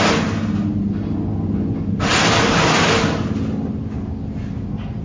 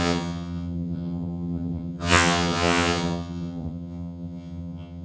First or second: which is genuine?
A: first